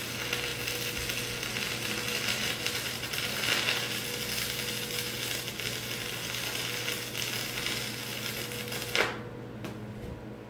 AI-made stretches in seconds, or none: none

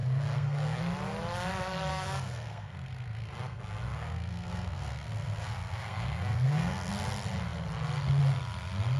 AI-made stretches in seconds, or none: 0.0-0.8 (codec, SNAC); 1.9-6.9

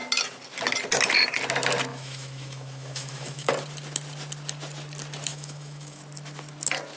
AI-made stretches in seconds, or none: 1.9-3.5 (autoencoder, DAC-VAE); 5.3-6.0

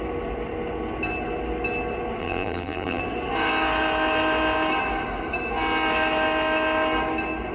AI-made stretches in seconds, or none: 2.2-3.0 (vocoder, BigVGAN v2)

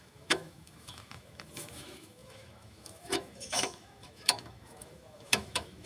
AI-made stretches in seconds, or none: 0.0-5.9 (autoencoder, DAC-VAE)